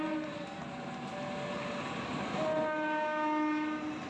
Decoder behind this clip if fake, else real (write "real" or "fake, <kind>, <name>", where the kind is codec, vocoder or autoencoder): real